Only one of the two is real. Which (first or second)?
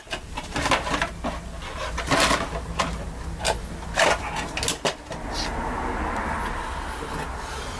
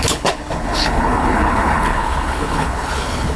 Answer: first